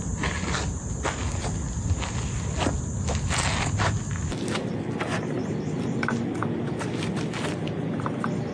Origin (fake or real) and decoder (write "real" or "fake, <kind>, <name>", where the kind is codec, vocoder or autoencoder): real